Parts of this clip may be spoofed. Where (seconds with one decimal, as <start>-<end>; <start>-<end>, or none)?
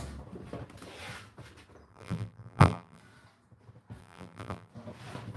1.9-3.0; 4.0-4.7